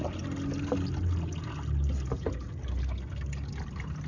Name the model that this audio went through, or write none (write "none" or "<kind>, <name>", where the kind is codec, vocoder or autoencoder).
none